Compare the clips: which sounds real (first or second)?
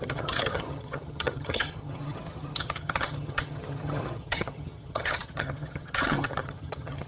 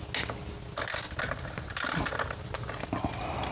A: second